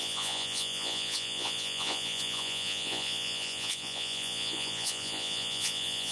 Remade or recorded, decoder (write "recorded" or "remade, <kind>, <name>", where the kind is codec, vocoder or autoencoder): remade, vocoder, Vocos